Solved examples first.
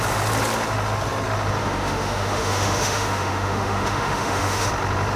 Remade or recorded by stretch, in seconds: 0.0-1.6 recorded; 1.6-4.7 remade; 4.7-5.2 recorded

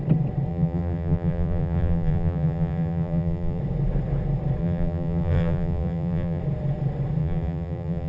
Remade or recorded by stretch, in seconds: 0.0-0.5 recorded; 0.5-3.6 remade; 3.6-4.6 recorded; 4.6-6.4 remade; 6.4-7.2 recorded; 7.2-8.1 remade

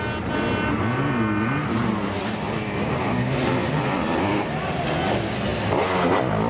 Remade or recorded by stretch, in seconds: 0.0-6.5 recorded

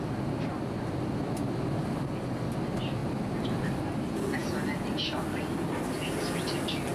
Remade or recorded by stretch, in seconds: 0.0-6.9 recorded

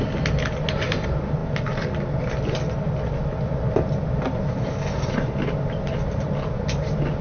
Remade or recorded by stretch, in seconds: 0.0-7.2 recorded

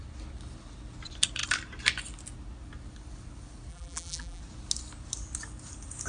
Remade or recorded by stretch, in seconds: 0.0-3.7 recorded; 3.7-4.4 remade; 4.4-6.1 recorded

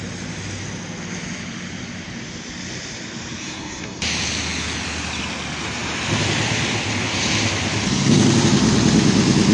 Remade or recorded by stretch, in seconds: 0.0-3.4 recorded; 3.4-4.0 remade; 4.0-9.5 recorded